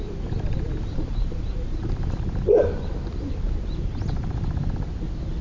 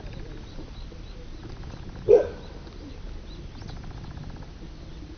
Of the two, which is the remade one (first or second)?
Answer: first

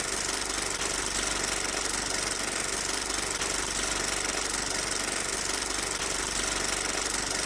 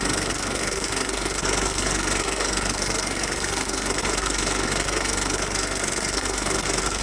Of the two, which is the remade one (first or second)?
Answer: second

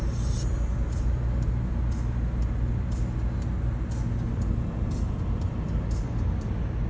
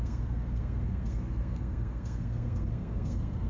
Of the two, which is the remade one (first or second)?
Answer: second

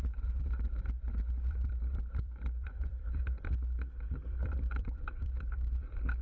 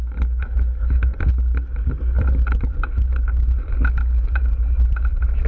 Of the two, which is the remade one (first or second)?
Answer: first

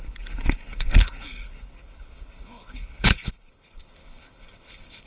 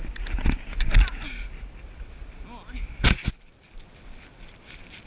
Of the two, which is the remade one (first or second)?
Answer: first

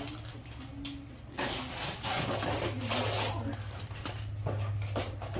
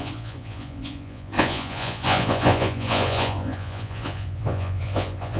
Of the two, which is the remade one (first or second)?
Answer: second